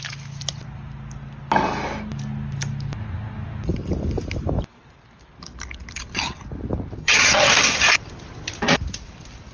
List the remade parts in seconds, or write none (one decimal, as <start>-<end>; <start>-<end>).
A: 7.0-7.5